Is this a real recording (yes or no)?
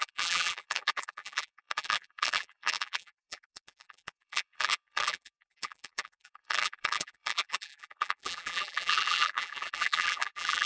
no